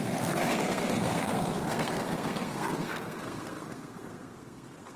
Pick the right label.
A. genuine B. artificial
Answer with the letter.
B